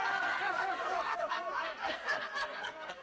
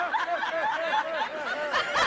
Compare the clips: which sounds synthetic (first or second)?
first